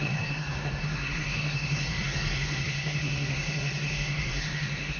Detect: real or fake fake